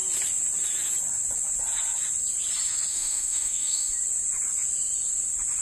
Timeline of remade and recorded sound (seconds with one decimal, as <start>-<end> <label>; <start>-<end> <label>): 0.0-2.9 recorded; 2.9-3.9 remade; 3.9-5.6 recorded

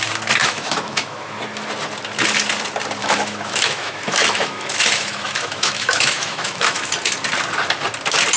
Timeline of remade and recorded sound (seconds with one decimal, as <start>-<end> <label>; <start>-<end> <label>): 0.0-0.4 recorded; 0.4-1.4 remade; 1.4-3.0 recorded; 3.0-6.9 remade; 6.9-8.4 recorded